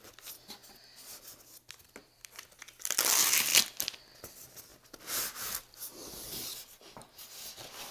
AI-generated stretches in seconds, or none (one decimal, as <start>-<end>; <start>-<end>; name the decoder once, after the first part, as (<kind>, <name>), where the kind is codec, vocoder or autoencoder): 2.0-2.6 (vocoder, BigVGAN v2)